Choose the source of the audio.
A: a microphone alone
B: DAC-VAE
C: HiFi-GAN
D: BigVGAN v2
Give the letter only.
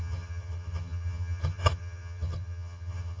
C